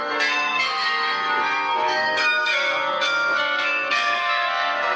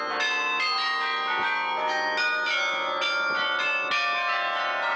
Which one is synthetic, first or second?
first